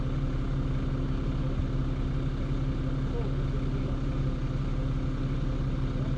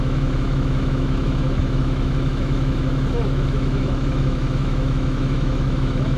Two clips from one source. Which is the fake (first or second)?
second